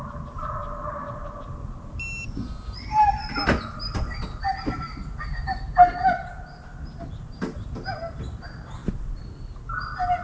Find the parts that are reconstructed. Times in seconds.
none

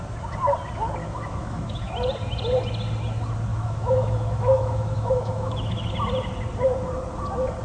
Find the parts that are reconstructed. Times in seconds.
1.0-1.9 (autoencoder, DAC-VAE); 3.5-5.9

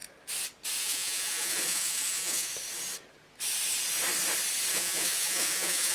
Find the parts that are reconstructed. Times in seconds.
0.8-2.5 (vocoder, Vocos); 4.7-5.9

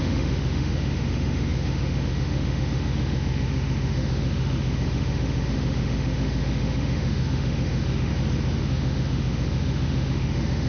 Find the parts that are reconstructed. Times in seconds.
0.0-8.1 (autoencoder, DAC-VAE); 8.6-10.7

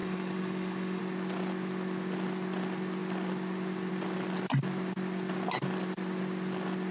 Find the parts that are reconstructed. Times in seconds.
0.0-1.0 (codec, DAC)

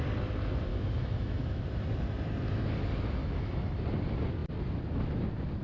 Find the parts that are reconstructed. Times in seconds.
0.7-1.6 (autoencoder, DAC-VAE); 3.2-3.8

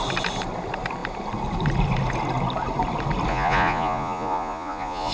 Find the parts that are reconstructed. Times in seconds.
3.3-5.1 (vocoder, Vocos)

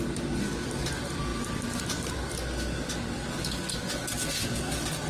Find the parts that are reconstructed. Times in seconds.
none